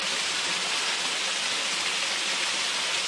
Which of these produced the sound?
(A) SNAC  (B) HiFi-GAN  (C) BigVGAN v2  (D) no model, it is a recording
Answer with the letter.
D